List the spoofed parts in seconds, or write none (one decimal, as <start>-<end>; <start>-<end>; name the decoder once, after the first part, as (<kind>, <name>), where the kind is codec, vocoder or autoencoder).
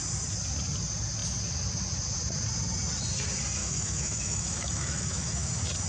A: 3.6-5.5 (autoencoder, DAC-VAE)